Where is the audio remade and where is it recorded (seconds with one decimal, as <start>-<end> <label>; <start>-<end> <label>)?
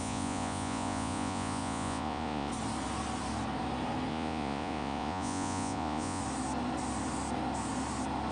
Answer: 0.0-2.5 remade; 2.5-4.1 recorded; 4.1-6.2 remade; 6.2-8.3 recorded